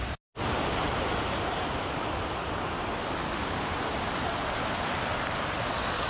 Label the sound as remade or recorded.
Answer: recorded